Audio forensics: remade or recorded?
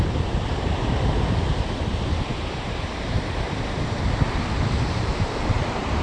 remade